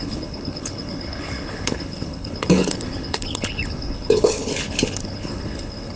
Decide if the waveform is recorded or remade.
remade